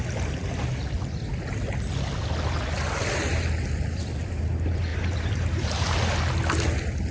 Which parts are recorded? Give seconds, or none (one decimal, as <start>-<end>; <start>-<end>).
0.0-4.9; 6.0-7.1